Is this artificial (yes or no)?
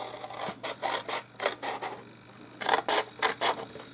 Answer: no